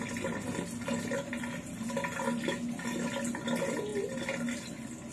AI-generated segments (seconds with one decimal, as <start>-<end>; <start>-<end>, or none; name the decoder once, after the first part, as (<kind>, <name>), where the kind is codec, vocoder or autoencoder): none